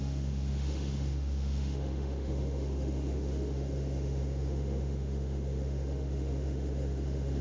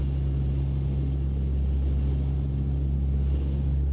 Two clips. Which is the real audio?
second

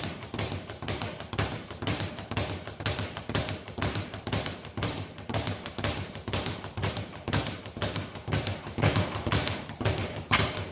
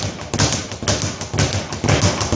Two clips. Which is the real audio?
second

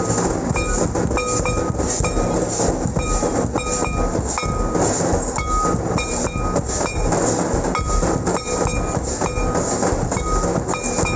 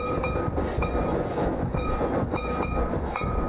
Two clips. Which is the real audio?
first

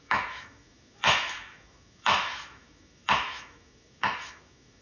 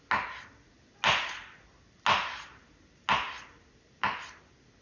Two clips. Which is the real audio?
second